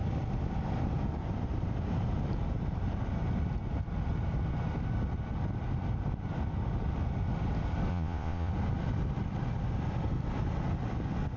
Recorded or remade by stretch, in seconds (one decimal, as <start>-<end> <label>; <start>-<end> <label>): 0.0-7.9 recorded; 7.9-8.5 remade; 8.5-11.4 recorded